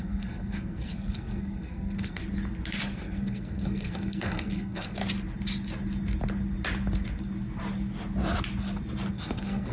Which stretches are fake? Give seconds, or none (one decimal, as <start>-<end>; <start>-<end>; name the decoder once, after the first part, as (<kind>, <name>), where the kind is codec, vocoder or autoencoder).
0.0-2.2 (codec, SNAC); 2.8-5.0; 9.1-9.7